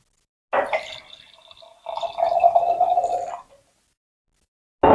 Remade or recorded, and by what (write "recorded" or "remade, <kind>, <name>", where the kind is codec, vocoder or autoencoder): recorded